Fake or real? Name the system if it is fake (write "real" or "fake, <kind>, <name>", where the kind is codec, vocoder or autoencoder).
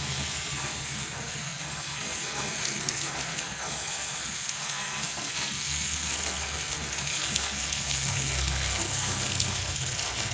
fake, codec, SNAC